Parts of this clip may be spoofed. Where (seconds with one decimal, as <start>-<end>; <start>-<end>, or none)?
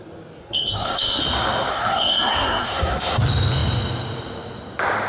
0.4-1.2; 1.7-3.2